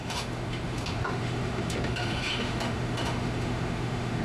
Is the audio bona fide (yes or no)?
no